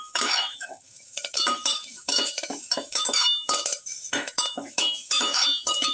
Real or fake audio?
fake